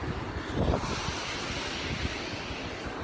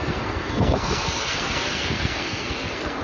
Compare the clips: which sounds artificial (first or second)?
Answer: second